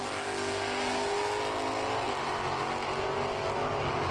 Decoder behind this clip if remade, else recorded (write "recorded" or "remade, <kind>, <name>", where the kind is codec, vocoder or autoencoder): recorded